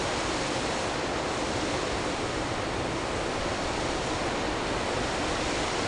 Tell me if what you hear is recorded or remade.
recorded